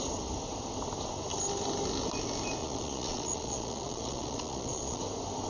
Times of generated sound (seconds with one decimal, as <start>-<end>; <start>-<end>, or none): 2.6-5.0